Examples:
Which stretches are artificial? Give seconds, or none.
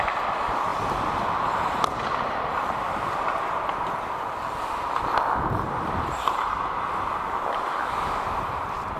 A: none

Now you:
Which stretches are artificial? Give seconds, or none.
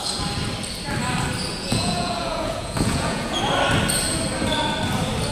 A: 1.5-3.4 (vocoder, Vocos)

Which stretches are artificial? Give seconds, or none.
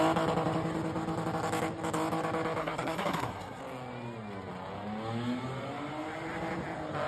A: 2.6-3.6 (codec, SNAC)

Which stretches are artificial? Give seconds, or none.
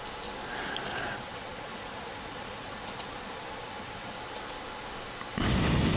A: 0.8-4.1 (vocoder, Vocos)